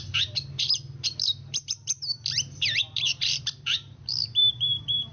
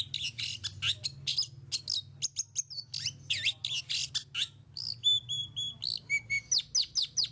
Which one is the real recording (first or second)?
second